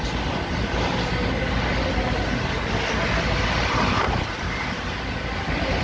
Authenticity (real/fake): real